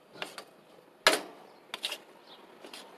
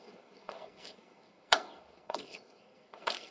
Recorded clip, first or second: first